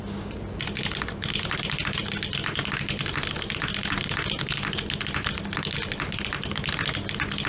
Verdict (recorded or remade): recorded